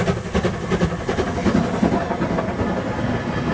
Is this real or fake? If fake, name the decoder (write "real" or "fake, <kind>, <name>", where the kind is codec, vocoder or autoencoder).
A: real